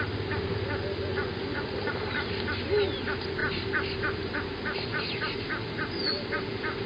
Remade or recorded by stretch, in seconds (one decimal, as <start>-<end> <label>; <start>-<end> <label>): 0.0-1.1 recorded; 1.1-1.9 remade; 1.9-6.9 recorded